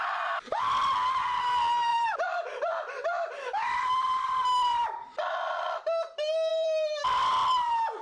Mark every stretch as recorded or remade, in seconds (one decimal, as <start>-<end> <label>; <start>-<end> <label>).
0.0-1.9 recorded; 1.9-3.8 remade; 3.8-4.7 recorded; 4.7-5.8 remade; 5.8-6.5 recorded; 6.5-7.5 remade; 7.5-8.0 recorded